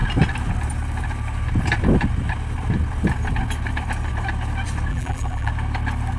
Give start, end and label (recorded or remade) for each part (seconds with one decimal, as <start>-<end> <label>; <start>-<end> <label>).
0.0-4.9 recorded; 4.9-5.5 remade; 5.5-6.2 recorded